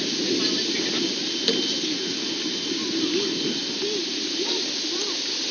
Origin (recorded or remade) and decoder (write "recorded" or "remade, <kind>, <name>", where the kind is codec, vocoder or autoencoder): recorded